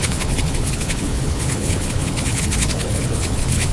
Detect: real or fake fake